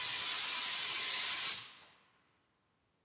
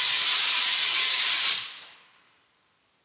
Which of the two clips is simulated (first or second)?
second